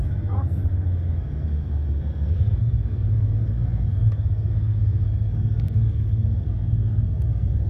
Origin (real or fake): fake